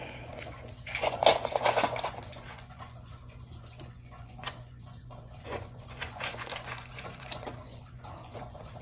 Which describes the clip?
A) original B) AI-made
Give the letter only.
B